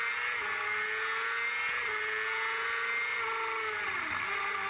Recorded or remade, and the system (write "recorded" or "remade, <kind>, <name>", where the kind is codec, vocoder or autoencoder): recorded